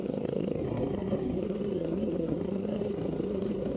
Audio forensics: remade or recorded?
remade